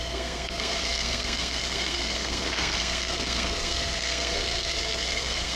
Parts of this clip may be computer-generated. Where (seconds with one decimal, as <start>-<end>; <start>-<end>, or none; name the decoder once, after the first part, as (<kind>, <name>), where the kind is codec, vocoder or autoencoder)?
0.0-5.5 (codec, SNAC)